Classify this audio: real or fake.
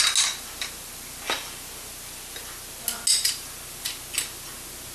real